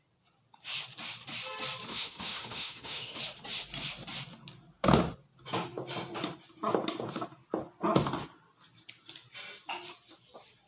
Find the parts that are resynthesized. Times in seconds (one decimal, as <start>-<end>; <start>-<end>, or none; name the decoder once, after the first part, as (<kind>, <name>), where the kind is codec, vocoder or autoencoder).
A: 1.9-3.2 (autoencoder, DAC-VAE)